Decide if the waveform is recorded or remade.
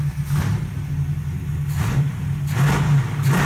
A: recorded